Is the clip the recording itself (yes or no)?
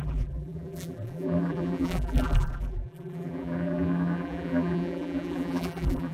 no